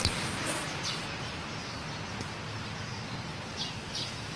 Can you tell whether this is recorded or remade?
recorded